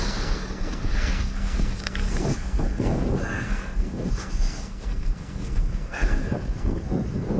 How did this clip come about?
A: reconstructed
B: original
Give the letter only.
A